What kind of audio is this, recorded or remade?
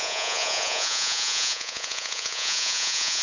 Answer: remade